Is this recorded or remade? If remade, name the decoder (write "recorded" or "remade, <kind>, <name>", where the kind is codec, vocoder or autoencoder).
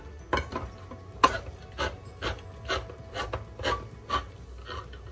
recorded